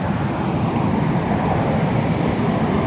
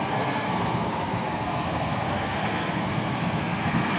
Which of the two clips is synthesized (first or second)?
second